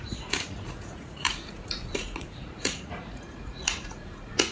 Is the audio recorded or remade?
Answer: remade